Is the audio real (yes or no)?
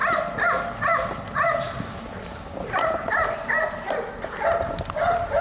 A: yes